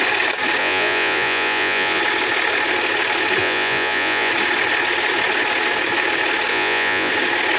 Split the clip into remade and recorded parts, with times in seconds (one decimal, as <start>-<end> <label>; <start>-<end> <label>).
0.0-0.6 recorded; 0.6-2.0 remade; 2.0-3.4 recorded; 3.4-4.3 remade; 4.3-6.5 recorded; 6.5-7.1 remade; 7.1-7.6 recorded